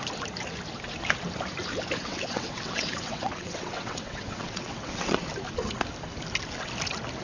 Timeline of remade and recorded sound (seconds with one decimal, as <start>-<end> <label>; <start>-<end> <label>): 0.0-2.0 recorded; 2.0-5.2 remade; 5.2-7.2 recorded